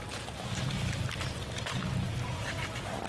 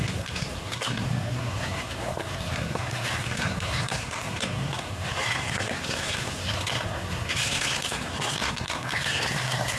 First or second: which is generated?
second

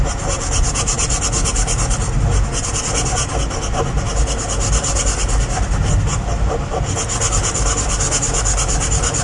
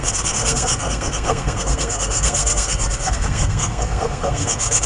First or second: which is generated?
second